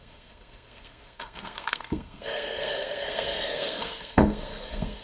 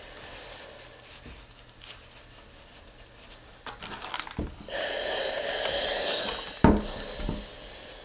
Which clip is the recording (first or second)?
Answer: second